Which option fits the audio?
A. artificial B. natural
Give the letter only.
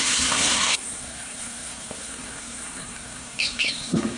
A